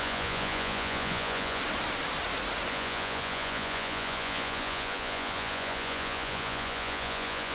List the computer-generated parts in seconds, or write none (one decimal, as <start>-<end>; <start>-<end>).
0.0-1.6; 2.7-7.5